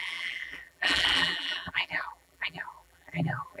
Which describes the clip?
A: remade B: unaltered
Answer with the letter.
A